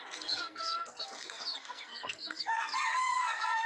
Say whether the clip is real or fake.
fake